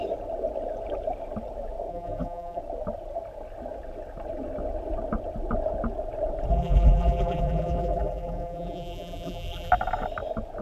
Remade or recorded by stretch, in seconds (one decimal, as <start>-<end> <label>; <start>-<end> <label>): 0.0-1.9 recorded; 1.9-2.6 remade; 2.6-6.5 recorded; 6.5-9.7 remade; 9.7-10.6 recorded